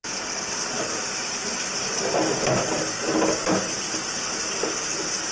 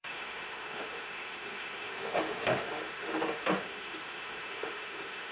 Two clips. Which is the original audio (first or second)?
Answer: first